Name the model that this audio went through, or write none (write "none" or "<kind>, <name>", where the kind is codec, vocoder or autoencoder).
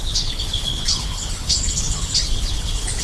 codec, HILCodec